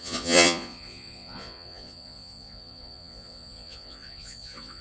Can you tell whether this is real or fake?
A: fake